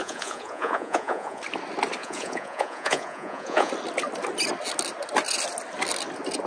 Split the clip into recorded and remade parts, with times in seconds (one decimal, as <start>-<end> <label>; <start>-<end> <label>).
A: 0.0-1.4 remade; 1.4-2.0 recorded; 2.0-3.7 remade; 3.7-6.5 recorded